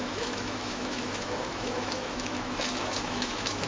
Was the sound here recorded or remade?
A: remade